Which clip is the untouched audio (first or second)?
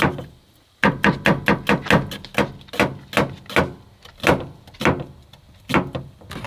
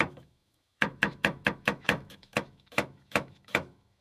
first